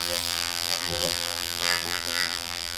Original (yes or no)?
no